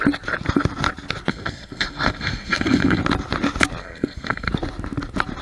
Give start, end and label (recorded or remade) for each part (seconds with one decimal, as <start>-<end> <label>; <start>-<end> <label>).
0.0-1.3 recorded; 1.3-3.0 remade; 3.0-3.8 recorded; 3.8-4.5 remade; 4.5-5.4 recorded